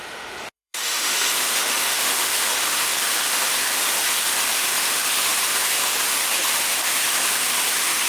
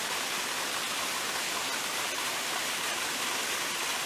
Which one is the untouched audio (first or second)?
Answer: second